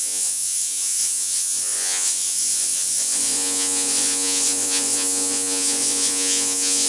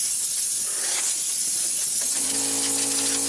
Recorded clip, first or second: second